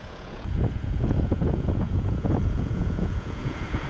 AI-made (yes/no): yes